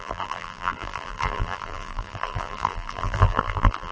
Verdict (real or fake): fake